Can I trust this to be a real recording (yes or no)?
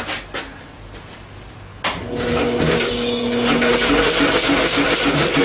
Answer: yes